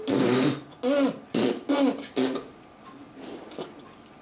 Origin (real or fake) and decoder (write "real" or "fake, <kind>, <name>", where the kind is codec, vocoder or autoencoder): real